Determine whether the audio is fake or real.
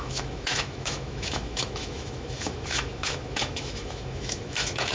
fake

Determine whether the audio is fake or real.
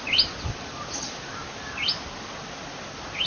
real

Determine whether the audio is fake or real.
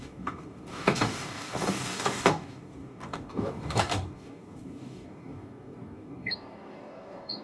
fake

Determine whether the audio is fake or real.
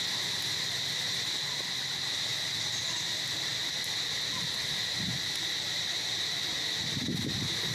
real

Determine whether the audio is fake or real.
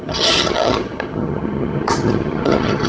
fake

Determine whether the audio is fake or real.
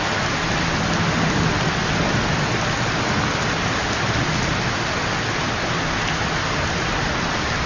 real